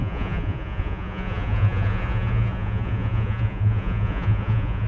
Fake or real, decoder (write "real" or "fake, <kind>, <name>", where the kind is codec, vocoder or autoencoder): fake, vocoder, Vocos